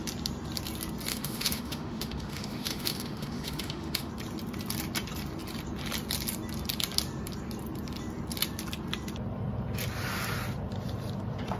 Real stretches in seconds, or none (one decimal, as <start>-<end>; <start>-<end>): 0.0-1.1; 4.1-11.6